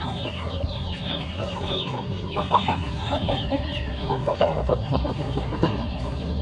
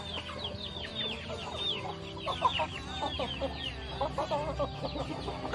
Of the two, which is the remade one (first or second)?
first